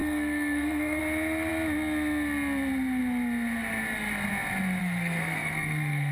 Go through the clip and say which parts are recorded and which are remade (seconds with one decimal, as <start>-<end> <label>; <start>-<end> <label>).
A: 0.0-1.0 remade; 1.0-4.8 recorded; 4.8-6.1 remade